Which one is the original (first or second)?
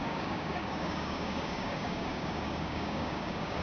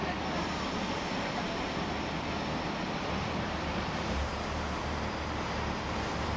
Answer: second